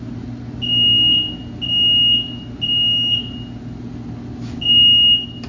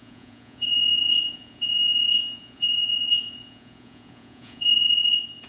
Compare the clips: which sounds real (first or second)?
first